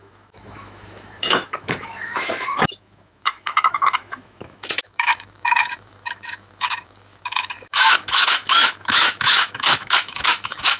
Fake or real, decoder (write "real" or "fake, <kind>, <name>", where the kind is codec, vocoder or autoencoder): fake, autoencoder, DAC-VAE